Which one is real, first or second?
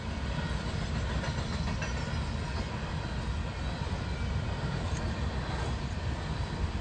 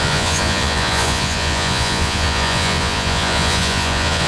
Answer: first